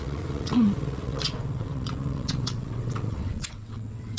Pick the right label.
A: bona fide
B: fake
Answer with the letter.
B